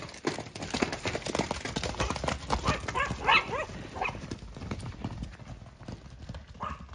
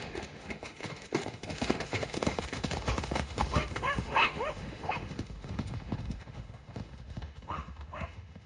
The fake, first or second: second